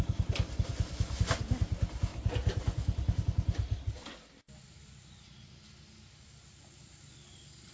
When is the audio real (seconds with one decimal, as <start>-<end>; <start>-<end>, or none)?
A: 0.0-7.7